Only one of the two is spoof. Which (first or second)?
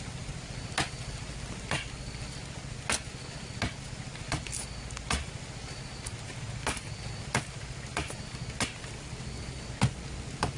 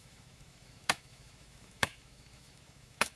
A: second